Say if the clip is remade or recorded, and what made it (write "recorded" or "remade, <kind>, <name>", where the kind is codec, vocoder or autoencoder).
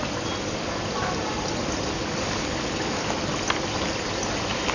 recorded